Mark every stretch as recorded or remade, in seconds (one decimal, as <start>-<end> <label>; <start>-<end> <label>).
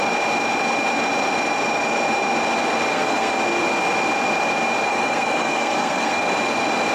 0.0-2.9 recorded; 2.9-3.4 remade; 3.4-4.9 recorded; 4.9-6.2 remade; 6.2-6.9 recorded